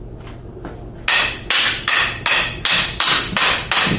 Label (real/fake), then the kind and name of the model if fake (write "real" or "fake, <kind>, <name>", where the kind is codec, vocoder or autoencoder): real